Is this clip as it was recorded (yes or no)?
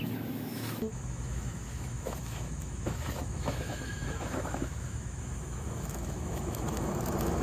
no